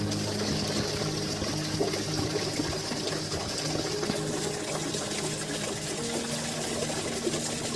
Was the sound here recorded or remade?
recorded